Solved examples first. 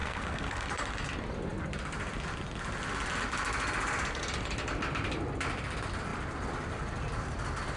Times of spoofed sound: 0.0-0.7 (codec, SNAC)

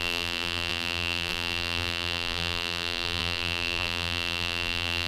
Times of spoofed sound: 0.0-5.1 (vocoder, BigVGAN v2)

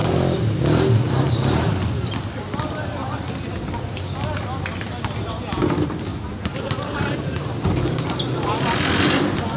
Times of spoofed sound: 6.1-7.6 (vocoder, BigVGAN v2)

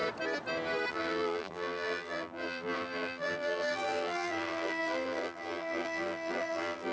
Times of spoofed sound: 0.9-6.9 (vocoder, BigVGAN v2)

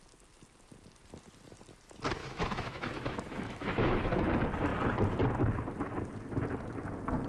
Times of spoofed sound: 2.2-4.1 (autoencoder, DAC-VAE)

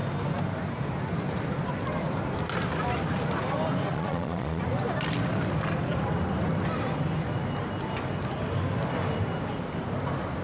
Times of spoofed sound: 3.9-4.6 (vocoder, Vocos)